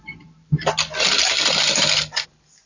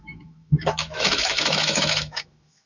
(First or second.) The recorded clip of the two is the first